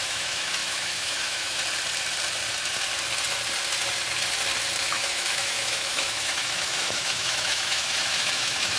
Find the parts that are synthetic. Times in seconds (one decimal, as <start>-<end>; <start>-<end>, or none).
0.0-1.6; 4.8-8.8